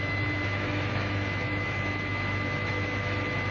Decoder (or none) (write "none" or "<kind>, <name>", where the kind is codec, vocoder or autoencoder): autoencoder, DAC-VAE